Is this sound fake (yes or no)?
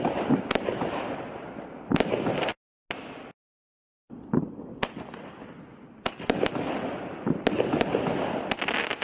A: no